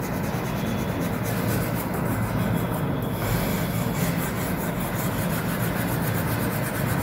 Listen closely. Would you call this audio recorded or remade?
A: recorded